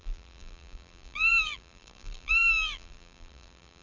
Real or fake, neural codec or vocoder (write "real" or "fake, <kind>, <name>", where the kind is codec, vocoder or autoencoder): fake, vocoder, BigVGAN v2